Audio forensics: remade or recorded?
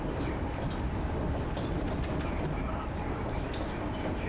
recorded